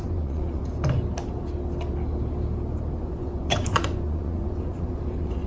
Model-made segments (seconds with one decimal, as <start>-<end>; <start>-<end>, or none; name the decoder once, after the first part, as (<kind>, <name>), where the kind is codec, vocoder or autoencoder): 0.0-0.6 (vocoder, Vocos); 3.0-5.5